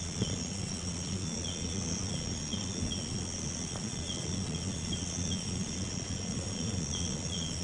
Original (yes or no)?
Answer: no